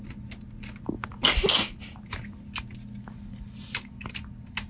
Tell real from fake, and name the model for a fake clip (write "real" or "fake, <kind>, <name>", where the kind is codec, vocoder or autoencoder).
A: real